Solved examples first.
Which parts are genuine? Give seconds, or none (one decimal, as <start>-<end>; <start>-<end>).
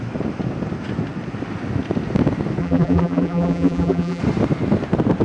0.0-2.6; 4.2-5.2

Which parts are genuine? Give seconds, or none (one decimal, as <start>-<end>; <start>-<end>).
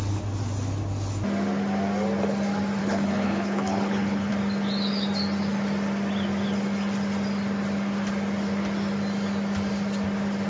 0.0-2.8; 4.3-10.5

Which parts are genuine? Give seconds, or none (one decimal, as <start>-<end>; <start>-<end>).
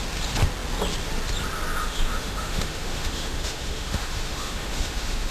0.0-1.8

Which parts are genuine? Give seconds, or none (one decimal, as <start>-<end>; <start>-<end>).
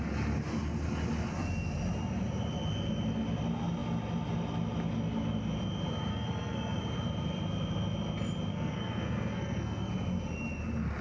0.0-6.1; 6.8-8.5; 9.9-11.0